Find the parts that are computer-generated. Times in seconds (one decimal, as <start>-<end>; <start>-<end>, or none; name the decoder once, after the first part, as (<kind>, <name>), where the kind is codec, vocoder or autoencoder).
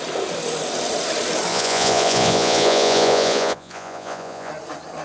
1.5-4.5 (vocoder, Vocos)